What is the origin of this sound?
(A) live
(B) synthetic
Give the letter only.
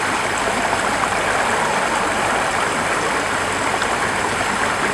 A